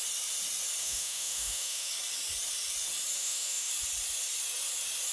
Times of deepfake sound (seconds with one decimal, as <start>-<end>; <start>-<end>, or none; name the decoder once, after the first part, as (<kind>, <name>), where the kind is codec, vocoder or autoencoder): 0.8-1.9 (autoencoder, DAC-VAE); 3.2-3.7